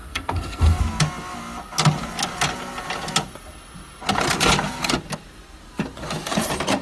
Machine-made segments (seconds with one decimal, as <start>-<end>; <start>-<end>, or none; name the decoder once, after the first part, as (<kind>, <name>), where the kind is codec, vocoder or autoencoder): 0.0-0.8 (codec, SNAC)